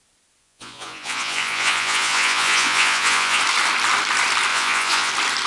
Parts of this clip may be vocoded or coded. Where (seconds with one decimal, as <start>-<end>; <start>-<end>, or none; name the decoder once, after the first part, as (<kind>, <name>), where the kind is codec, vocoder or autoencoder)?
0.4-3.4 (vocoder, Vocos); 4.5-5.1